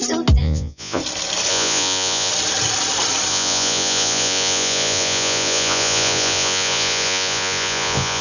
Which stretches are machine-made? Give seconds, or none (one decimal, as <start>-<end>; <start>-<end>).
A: 0.4-1.0; 1.5-2.3; 3.3-8.2